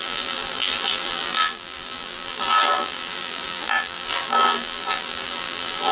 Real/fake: fake